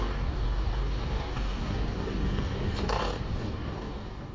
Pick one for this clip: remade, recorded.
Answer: remade